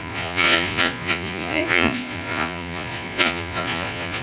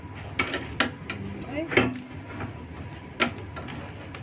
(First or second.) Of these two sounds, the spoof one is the first